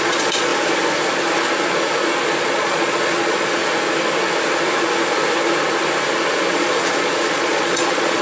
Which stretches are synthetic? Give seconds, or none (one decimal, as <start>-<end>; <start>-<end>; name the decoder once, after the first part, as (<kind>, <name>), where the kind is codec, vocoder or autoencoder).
0.0-0.5 (vocoder, Vocos); 2.4-3.6; 6.5-8.2